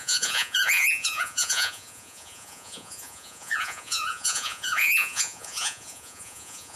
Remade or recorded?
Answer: remade